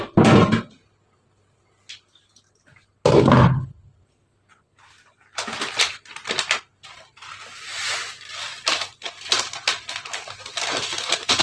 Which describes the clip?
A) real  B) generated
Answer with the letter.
A